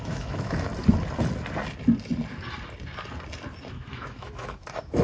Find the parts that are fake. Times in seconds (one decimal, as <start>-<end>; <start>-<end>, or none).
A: 0.0-0.7; 3.7-5.0